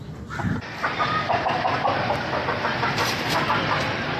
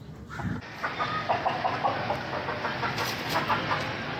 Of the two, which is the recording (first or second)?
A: second